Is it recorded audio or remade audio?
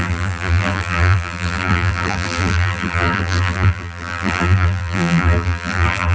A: remade